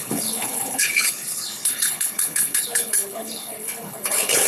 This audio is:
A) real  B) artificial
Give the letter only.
B